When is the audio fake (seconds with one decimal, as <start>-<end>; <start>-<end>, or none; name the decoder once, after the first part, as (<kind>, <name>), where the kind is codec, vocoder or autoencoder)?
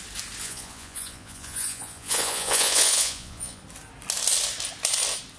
0.4-3.6 (vocoder, Vocos)